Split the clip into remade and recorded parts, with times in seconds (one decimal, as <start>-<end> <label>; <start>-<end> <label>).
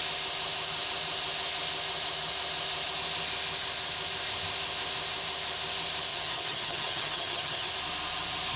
0.0-6.1 recorded; 6.1-7.7 remade; 7.7-8.6 recorded